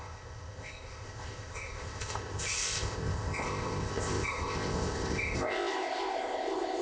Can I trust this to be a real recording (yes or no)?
no